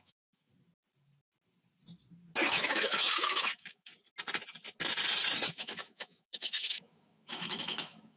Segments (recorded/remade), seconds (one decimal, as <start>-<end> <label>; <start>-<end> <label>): 0.0-0.5 remade; 0.5-2.5 recorded; 2.5-3.9 remade; 3.9-5.5 recorded; 5.5-8.2 remade